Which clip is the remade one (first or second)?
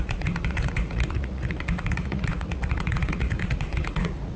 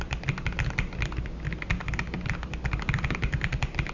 first